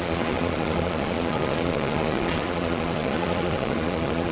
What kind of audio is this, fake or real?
fake